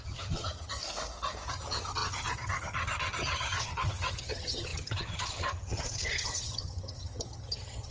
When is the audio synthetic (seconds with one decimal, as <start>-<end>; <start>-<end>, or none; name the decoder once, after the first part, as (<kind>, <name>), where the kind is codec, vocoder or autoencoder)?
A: 0.0-0.8 (vocoder, HiFi-GAN); 1.5-7.9